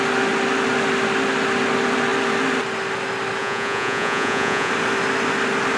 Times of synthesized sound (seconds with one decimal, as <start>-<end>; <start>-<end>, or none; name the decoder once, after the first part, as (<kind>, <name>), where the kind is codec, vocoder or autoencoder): 3.4-4.7 (vocoder, Vocos)